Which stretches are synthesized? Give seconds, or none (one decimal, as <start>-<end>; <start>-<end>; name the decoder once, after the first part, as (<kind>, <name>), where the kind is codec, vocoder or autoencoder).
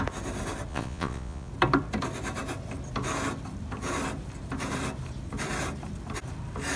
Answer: 0.7-1.5 (vocoder, Vocos)